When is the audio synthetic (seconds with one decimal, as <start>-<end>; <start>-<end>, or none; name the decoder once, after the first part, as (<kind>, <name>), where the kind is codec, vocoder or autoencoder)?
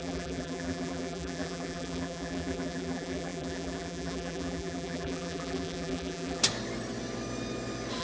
0.0-6.4 (vocoder, BigVGAN v2)